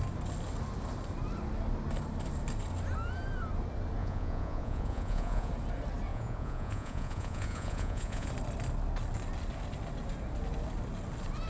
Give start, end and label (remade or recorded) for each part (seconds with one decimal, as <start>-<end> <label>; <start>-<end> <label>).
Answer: 0.0-4.0 recorded; 4.0-5.5 remade; 5.5-6.1 recorded; 6.1-8.3 remade; 8.3-11.5 recorded